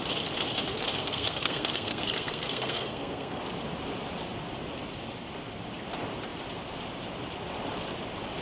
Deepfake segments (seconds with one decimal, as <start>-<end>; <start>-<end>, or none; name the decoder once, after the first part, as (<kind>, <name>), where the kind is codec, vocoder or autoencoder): 1.0-3.4 (codec, SNAC)